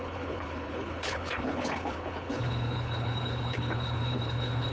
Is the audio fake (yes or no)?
yes